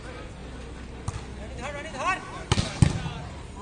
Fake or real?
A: real